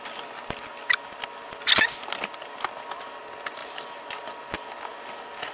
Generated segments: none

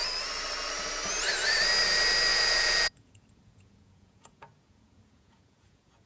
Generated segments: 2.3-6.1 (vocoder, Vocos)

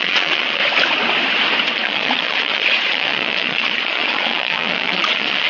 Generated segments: 0.0-0.6 (vocoder, Vocos); 1.7-5.5